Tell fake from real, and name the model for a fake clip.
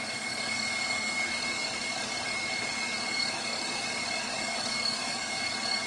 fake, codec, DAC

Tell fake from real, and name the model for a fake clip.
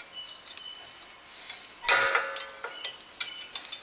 real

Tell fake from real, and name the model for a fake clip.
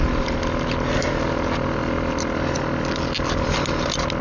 real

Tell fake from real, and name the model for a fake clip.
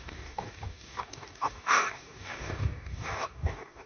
fake, codec, DAC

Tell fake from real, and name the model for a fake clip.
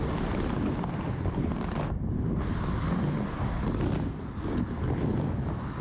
real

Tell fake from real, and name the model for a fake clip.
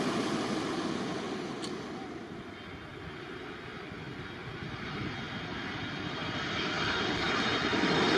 real